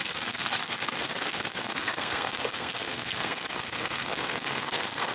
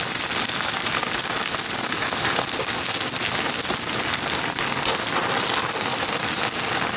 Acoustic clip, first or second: second